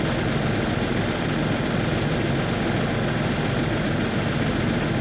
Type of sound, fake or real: real